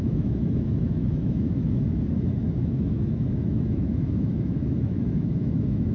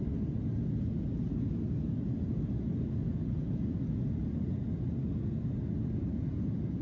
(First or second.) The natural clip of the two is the second